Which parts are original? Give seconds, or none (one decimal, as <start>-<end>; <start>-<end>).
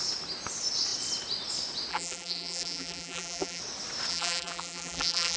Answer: 0.0-1.9; 3.6-4.1